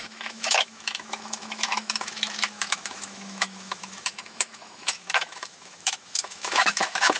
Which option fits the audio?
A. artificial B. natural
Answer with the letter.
A